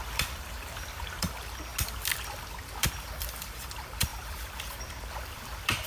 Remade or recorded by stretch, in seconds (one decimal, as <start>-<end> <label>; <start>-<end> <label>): 0.0-1.7 remade; 1.7-2.6 recorded; 2.6-5.9 remade